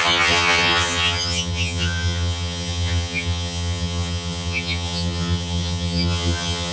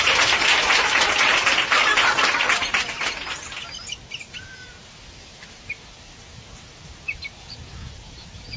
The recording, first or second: second